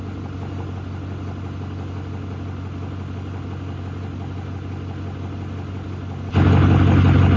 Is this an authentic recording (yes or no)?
yes